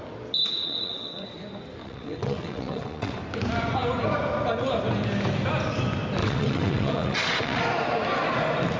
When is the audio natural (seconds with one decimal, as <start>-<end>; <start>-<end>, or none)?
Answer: 0.0-0.6; 1.3-1.8; 3.2-6.2; 7.6-8.8

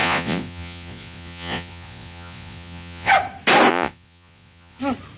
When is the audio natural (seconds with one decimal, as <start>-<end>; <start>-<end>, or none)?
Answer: 3.1-3.7; 4.8-5.2